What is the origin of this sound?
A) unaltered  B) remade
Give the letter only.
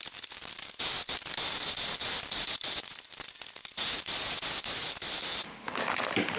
A